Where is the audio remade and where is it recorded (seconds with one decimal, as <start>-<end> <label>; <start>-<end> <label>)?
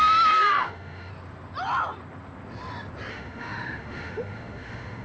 0.0-1.1 remade; 1.1-3.1 recorded; 3.1-5.0 remade